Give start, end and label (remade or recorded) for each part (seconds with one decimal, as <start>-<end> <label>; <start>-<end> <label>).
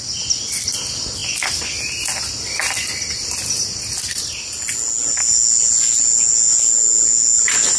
0.0-7.8 recorded